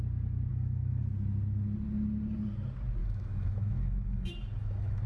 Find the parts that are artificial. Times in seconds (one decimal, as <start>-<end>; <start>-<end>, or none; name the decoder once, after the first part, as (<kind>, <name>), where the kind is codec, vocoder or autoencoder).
0.5-1.0 (autoencoder, DAC-VAE); 3.0-5.1